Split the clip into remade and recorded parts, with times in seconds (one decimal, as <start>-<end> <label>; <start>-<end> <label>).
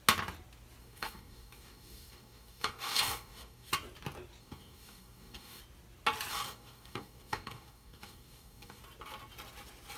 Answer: 0.0-0.8 recorded; 0.8-3.7 remade; 3.7-4.4 recorded; 4.4-5.6 remade; 5.6-6.3 recorded; 6.3-8.8 remade; 8.8-10.0 recorded